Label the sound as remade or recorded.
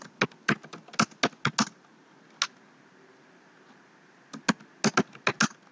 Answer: recorded